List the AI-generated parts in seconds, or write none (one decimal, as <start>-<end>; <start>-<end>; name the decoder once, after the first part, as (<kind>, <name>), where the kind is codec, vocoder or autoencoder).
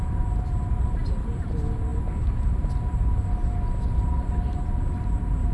none